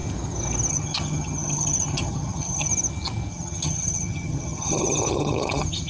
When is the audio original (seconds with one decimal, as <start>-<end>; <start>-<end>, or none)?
0.0-0.7; 2.7-3.3